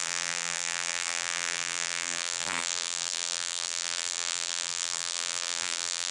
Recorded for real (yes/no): no